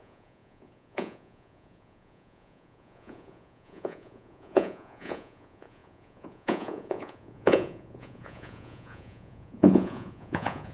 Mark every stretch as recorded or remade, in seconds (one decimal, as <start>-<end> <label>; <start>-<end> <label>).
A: 0.0-10.7 remade